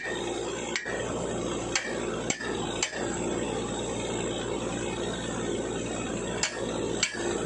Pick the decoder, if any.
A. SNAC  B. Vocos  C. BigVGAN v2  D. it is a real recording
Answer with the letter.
D